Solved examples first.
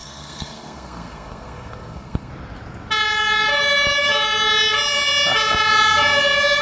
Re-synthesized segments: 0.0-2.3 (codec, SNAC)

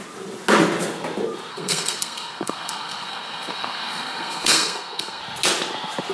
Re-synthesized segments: 1.5-5.2 (codec, SNAC)

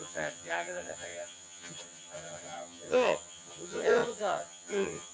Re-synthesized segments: 0.0-5.1 (vocoder, HiFi-GAN)

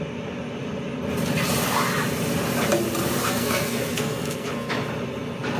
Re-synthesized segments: 3.2-4.7 (codec, SNAC)

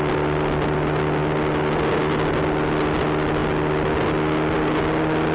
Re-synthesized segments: none

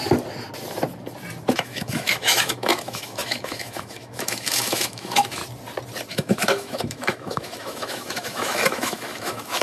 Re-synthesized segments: 1.5-5.4 (autoencoder, DAC-VAE); 6.1-9.6

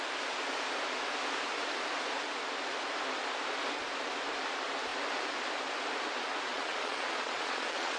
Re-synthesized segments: 6.5-8.0 (vocoder, Vocos)

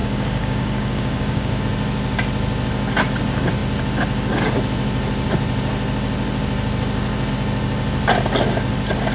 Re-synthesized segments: 0.0-1.6 (codec, DAC)